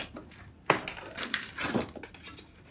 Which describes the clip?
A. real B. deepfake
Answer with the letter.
A